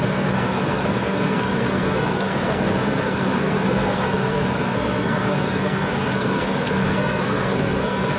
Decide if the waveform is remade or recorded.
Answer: remade